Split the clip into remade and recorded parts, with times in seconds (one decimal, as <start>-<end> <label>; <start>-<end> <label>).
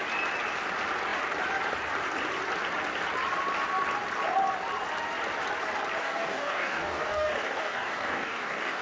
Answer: 0.0-6.0 recorded; 6.0-8.8 remade